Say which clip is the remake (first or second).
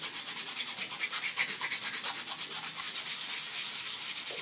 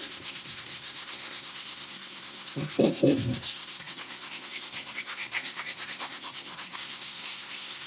second